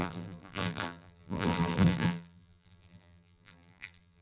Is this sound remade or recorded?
remade